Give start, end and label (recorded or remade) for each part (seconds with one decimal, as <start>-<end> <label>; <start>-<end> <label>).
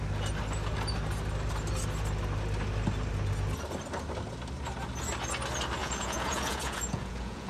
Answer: 0.0-5.8 recorded; 5.8-7.5 remade